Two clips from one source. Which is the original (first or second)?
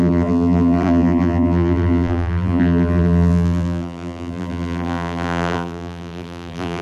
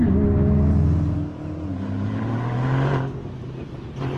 second